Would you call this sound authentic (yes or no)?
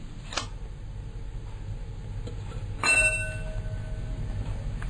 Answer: yes